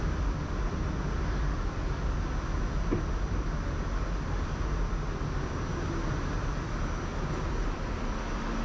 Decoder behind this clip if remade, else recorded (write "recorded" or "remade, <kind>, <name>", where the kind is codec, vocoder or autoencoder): recorded